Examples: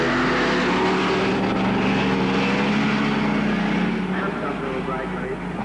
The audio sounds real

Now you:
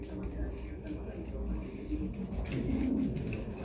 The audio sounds real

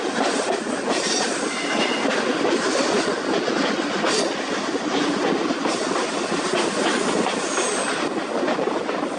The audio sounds real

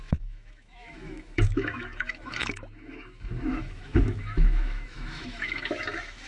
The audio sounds fake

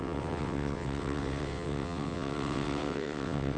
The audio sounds fake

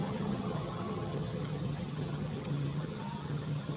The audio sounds fake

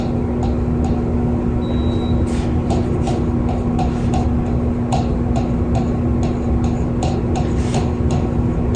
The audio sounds real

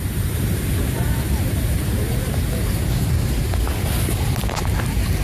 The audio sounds fake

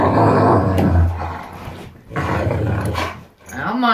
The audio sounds fake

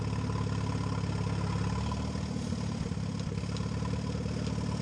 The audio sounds real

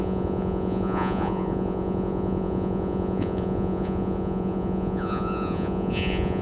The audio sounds fake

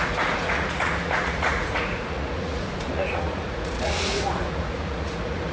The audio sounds fake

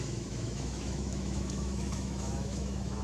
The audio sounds fake